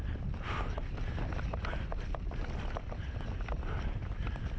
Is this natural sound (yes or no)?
yes